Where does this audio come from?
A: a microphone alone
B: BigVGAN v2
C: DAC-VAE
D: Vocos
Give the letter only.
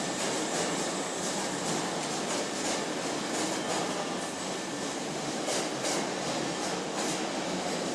A